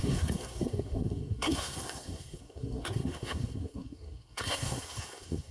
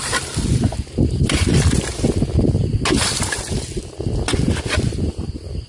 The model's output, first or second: first